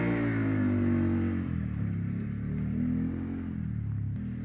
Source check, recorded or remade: recorded